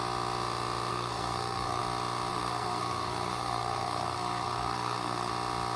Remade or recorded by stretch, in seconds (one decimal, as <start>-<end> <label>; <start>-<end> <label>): 0.0-0.9 recorded; 0.9-1.8 remade; 1.8-2.3 recorded; 2.3-5.3 remade; 5.3-5.8 recorded